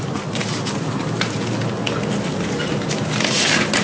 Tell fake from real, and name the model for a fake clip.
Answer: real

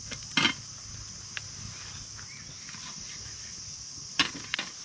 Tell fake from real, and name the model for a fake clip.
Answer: real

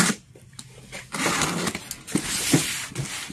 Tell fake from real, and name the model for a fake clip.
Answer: real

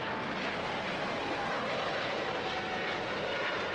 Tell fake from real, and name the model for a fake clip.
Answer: real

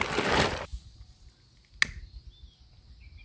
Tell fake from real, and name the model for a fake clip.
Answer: real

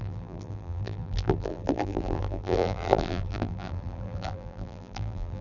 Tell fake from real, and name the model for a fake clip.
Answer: fake, vocoder, BigVGAN v2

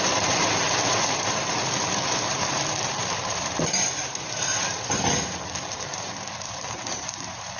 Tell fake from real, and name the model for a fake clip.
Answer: fake, vocoder, BigVGAN v2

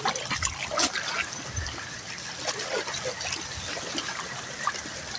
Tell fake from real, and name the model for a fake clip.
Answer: real